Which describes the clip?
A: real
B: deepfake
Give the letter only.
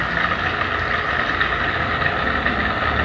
A